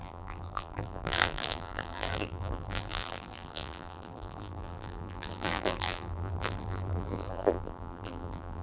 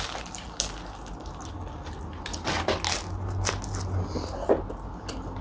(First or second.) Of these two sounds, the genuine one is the second